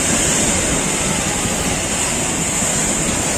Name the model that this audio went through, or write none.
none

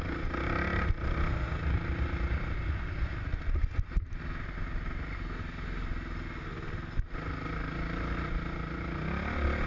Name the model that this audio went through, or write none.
none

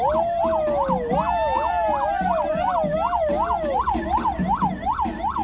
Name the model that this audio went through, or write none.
none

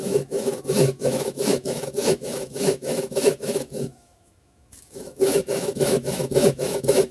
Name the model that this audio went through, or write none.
autoencoder, DAC-VAE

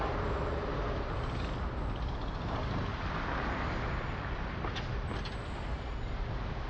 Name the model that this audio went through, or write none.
none